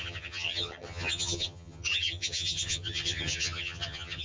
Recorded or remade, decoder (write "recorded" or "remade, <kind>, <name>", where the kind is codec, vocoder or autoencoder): remade, vocoder, HiFi-GAN